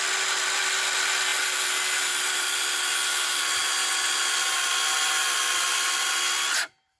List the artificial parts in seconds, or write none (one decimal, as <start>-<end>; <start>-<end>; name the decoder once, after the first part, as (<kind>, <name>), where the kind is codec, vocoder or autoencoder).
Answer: none